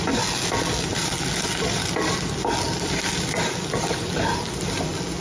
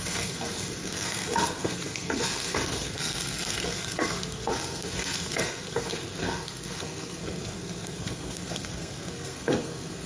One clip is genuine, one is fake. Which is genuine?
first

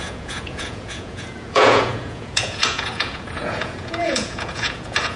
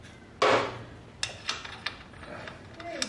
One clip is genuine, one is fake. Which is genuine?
second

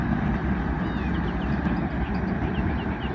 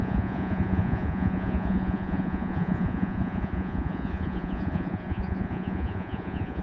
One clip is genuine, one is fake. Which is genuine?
first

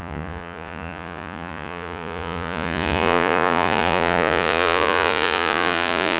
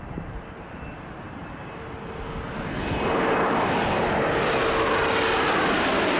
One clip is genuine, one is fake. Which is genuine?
second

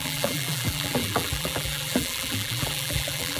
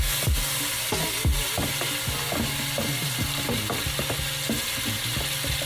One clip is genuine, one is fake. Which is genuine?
second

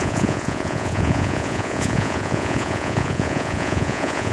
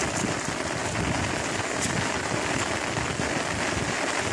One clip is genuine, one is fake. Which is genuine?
second